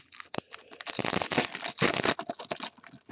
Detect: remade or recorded recorded